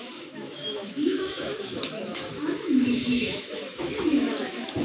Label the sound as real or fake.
fake